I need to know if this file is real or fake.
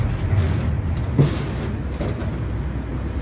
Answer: real